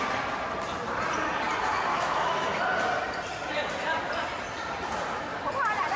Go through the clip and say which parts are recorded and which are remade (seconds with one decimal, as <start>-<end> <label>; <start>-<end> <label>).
0.0-1.9 recorded; 1.9-2.6 remade; 2.6-6.0 recorded